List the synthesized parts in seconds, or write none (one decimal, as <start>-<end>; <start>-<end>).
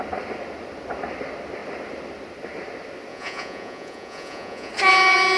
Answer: 3.1-4.7